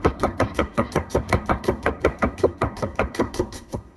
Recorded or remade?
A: remade